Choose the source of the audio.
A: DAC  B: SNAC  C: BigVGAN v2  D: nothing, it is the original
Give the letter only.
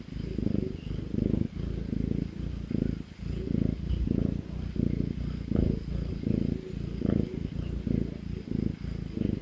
D